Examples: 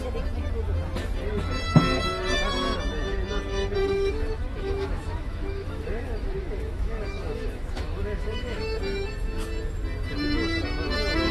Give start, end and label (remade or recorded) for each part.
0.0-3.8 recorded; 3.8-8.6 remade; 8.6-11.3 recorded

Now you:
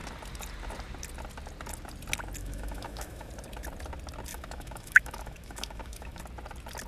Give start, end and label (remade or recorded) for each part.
0.0-2.4 recorded; 2.4-3.3 remade; 3.3-4.3 recorded; 4.3-6.2 remade; 6.2-6.9 recorded

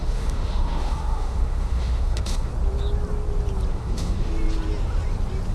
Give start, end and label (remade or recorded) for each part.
0.0-2.5 remade; 2.5-3.7 recorded; 3.7-4.3 remade; 4.3-5.5 recorded

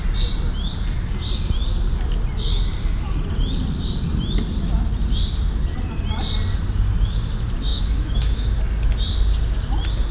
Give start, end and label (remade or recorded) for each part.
0.0-7.7 recorded; 7.7-8.6 remade; 8.6-10.1 recorded

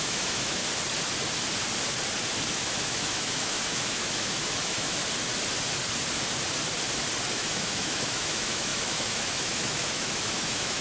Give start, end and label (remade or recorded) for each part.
0.0-0.6 remade; 0.6-2.5 recorded; 2.5-5.0 remade; 5.0-7.3 recorded; 7.3-10.8 remade